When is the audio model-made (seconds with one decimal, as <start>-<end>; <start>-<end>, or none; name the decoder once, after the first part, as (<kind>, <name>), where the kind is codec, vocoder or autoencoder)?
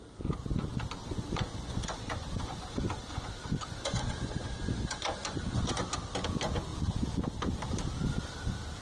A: 1.0-5.9 (vocoder, Vocos)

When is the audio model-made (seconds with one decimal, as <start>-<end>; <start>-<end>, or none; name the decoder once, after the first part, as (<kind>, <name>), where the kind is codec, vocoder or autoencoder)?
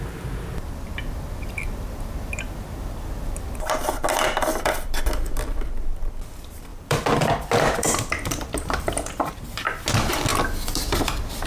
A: 6.7-9.3 (vocoder, BigVGAN v2)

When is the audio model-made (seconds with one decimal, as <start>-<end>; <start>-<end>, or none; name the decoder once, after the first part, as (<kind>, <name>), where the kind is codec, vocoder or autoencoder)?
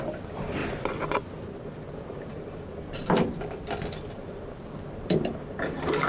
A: none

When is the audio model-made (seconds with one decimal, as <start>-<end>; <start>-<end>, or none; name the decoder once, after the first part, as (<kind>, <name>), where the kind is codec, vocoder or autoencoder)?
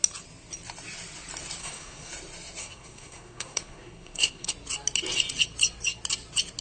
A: 1.6-2.1 (codec, SNAC); 2.6-4.5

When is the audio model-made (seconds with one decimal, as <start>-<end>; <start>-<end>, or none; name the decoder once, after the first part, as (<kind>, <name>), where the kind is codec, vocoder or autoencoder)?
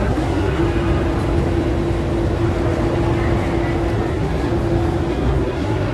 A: 0.0-0.6 (codec, SNAC); 4.1-4.5; 5.1-5.9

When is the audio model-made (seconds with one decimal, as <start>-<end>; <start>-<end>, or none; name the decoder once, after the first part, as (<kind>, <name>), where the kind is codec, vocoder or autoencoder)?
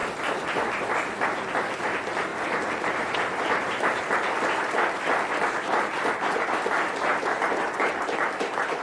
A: 1.7-8.8 (vocoder, BigVGAN v2)